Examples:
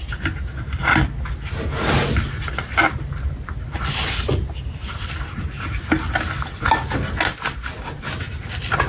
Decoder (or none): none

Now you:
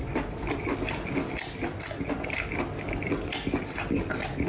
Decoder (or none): none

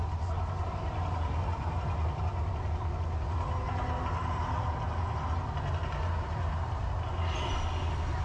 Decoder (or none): none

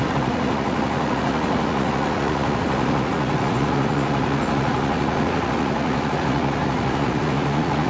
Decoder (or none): vocoder, Vocos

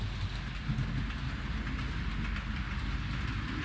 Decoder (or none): none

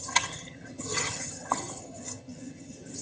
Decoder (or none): vocoder, HiFi-GAN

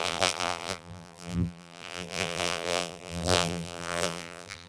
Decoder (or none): vocoder, BigVGAN v2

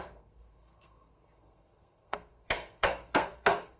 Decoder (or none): codec, SNAC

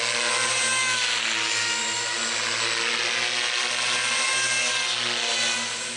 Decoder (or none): none